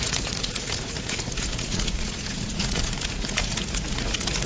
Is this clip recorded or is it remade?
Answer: remade